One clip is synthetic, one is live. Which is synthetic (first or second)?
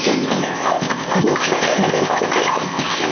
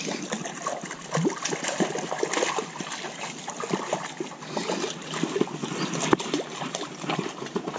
first